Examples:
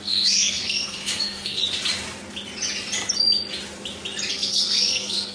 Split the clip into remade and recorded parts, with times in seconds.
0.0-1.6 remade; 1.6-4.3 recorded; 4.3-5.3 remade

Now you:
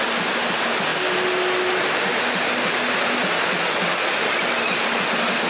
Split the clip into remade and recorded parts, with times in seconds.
0.0-5.5 recorded

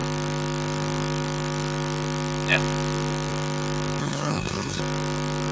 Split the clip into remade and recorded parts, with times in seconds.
0.0-4.0 recorded; 4.0-4.8 remade; 4.8-5.5 recorded

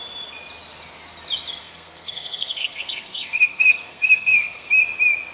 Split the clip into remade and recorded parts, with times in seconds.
0.0-1.6 recorded; 1.6-4.7 remade; 4.7-5.3 recorded

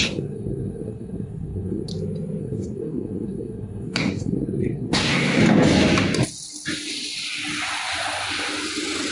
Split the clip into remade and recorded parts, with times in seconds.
0.0-1.9 remade; 1.9-2.4 recorded; 2.4-5.4 remade; 5.4-9.1 recorded

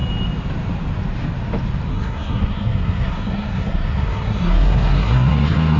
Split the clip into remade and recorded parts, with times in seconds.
0.0-1.9 recorded; 1.9-5.8 remade

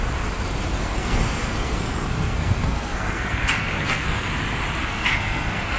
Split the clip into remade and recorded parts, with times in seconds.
0.0-0.8 recorded; 0.8-4.3 remade; 4.3-4.8 recorded; 4.8-5.8 remade